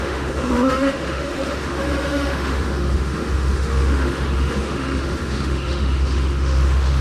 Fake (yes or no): yes